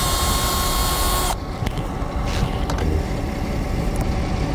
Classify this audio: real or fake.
real